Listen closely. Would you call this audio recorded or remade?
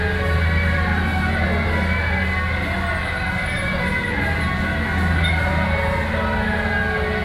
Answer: recorded